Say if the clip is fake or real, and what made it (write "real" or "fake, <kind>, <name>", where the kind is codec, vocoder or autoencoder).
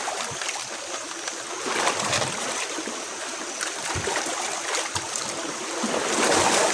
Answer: real